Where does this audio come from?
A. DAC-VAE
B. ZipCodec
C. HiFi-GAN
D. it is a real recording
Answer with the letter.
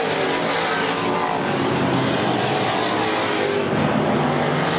D